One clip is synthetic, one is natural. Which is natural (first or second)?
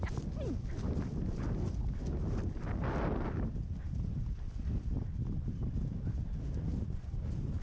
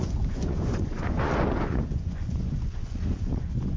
first